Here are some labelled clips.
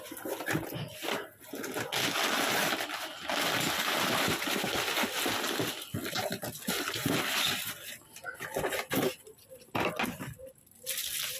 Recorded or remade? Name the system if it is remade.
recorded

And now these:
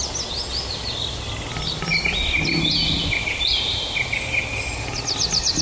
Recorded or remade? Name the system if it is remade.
recorded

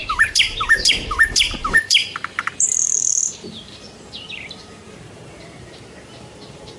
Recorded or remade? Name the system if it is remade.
remade, vocoder, BigVGAN v2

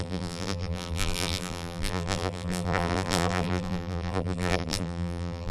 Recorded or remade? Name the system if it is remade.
remade, vocoder, BigVGAN v2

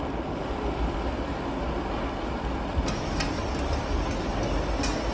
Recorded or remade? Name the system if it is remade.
recorded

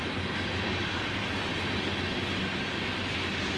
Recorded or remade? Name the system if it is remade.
recorded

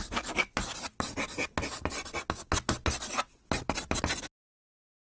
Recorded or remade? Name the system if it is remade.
recorded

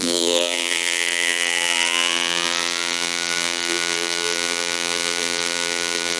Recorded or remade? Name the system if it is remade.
remade, vocoder, BigVGAN v2